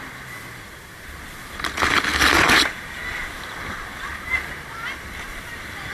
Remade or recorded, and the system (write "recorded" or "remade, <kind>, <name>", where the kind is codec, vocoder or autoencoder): recorded